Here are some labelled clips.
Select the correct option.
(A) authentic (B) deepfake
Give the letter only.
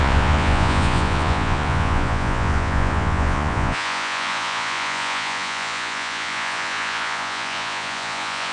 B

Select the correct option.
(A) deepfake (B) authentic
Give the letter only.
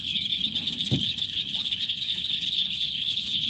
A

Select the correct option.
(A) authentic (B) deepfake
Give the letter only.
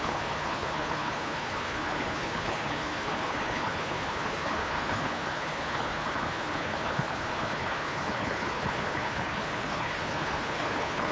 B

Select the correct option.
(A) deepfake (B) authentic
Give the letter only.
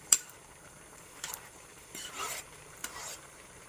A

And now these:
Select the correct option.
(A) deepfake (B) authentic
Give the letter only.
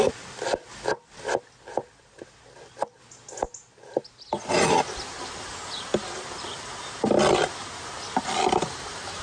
B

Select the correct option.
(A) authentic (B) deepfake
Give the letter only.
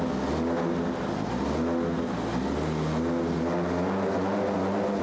A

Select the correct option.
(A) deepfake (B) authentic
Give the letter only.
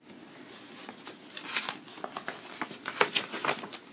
B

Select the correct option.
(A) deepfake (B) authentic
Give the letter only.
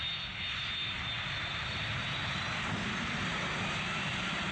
B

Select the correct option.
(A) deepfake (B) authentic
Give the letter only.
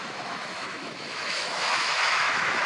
A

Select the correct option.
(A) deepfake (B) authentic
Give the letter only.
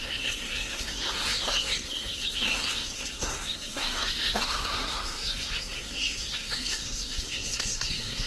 A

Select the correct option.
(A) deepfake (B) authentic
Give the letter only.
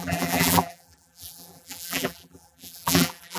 A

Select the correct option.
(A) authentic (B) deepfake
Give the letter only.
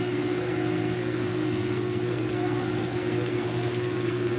B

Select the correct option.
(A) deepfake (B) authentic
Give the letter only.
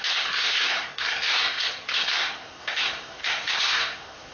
A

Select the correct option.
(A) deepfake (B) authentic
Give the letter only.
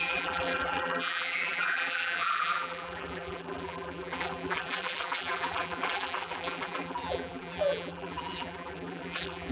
A